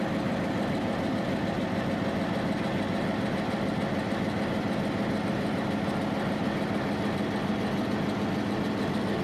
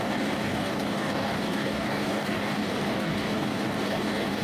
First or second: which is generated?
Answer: second